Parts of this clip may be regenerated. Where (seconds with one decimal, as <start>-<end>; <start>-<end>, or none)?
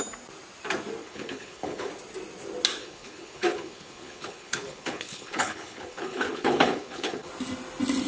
1.0-1.9; 2.8-7.3